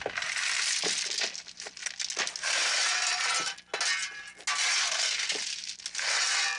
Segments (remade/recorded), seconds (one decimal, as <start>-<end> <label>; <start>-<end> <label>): 0.0-6.6 recorded